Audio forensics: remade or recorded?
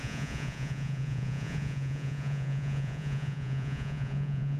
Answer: remade